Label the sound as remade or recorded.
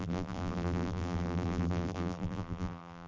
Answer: remade